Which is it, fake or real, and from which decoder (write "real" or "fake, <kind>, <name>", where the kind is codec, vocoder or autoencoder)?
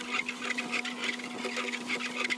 real